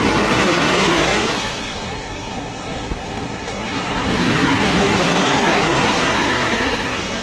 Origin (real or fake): fake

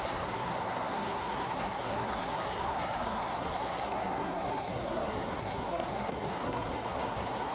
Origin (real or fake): fake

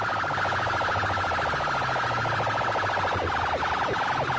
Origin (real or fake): real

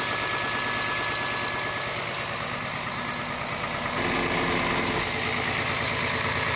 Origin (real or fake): real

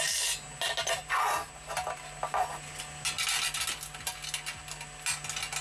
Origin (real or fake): real